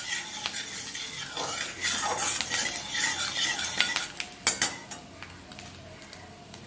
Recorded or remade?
recorded